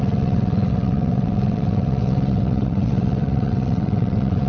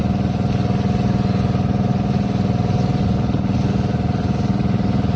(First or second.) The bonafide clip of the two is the second